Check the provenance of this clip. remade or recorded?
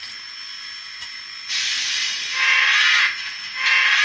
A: recorded